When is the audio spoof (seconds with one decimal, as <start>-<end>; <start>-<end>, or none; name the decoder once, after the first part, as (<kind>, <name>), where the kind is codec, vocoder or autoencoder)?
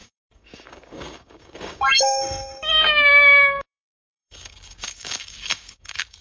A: 0.0-6.2 (codec, DAC)